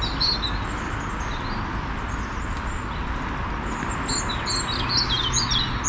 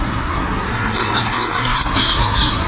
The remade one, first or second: second